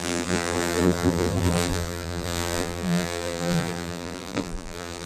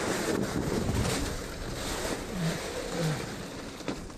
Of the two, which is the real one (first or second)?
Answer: second